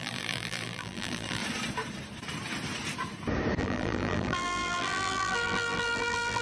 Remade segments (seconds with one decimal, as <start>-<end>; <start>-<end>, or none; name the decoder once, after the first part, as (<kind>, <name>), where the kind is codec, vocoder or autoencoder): 0.0-1.4 (vocoder, BigVGAN v2); 3.6-6.4